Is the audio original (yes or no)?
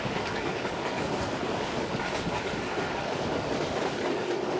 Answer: no